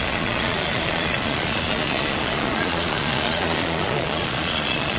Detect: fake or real fake